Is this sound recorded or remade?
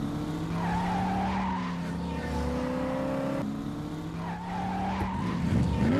recorded